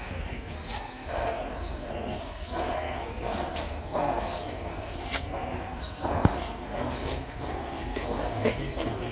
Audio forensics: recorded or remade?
remade